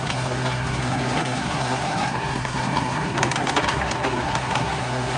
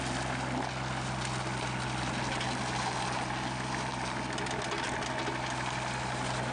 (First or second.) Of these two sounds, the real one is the second